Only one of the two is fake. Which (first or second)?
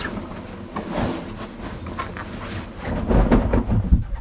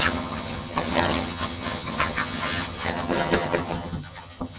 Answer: second